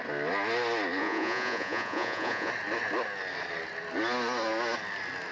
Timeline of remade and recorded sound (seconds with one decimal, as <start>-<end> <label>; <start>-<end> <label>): 0.0-1.0 recorded; 1.0-2.5 remade; 2.5-5.3 recorded